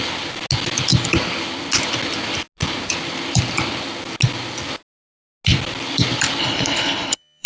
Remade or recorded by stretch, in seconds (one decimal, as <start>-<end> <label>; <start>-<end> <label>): 0.0-6.4 recorded; 6.4-7.5 remade